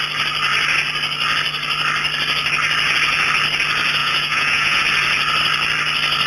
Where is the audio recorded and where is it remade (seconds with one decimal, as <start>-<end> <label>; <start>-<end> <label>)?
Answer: 0.0-4.0 recorded; 4.0-4.8 remade; 4.8-6.3 recorded